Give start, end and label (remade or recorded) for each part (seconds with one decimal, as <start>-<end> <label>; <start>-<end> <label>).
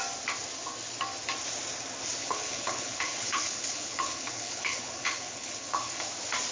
0.0-2.2 recorded; 2.2-6.1 remade; 6.1-6.5 recorded